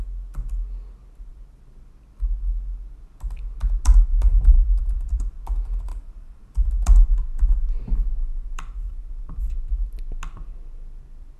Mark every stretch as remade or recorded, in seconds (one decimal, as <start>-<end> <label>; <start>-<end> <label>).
0.0-4.1 recorded; 4.1-4.8 remade; 4.8-5.9 recorded; 5.9-6.7 remade; 6.7-8.2 recorded; 8.2-9.4 remade; 9.4-11.4 recorded